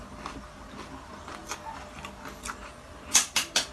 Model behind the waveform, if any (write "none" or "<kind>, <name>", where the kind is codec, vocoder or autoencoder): none